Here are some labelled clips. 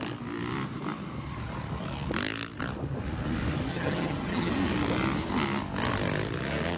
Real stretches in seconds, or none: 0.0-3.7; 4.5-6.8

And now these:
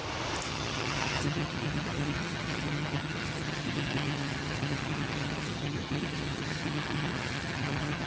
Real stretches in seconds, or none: 0.0-0.5

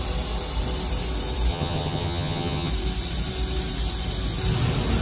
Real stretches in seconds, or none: 0.0-1.5; 2.7-5.0